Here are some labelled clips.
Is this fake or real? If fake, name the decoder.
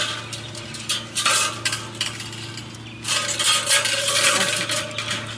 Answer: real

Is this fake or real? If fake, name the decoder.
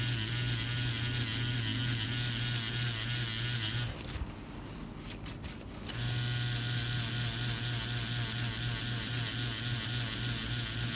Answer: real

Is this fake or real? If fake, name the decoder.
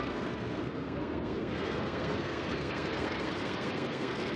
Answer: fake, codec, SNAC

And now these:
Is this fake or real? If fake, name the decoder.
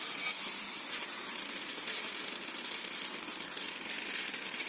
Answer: real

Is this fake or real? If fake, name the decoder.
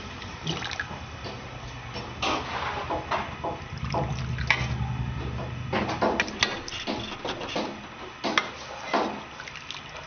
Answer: real